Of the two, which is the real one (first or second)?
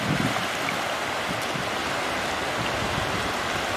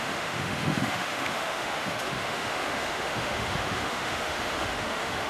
first